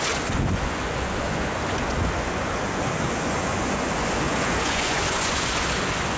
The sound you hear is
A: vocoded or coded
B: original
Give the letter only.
A